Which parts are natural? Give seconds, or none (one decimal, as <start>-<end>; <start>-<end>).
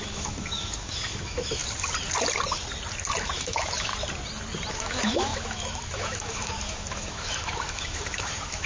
1.6-3.2; 3.9-4.7